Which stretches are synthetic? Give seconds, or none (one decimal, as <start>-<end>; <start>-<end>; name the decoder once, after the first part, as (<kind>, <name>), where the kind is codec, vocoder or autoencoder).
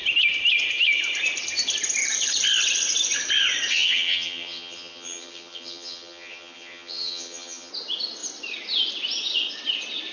3.7-7.7 (vocoder, HiFi-GAN)